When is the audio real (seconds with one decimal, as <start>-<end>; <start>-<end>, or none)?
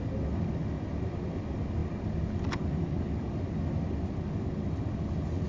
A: 0.0-5.5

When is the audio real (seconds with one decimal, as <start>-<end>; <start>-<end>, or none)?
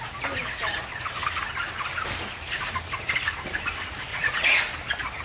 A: 0.0-4.1; 4.6-5.2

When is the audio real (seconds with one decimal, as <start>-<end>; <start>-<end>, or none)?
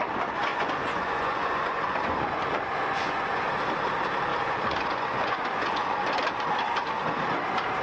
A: 0.0-0.5; 3.5-4.3; 6.0-7.8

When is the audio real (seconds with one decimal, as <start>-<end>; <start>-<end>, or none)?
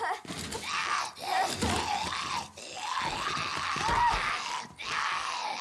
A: 0.0-5.6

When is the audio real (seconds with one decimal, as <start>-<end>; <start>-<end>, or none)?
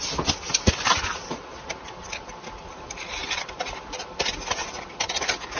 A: 0.0-5.6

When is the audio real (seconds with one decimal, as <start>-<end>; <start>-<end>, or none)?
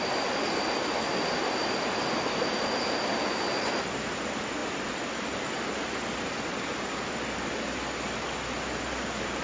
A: 0.0-9.4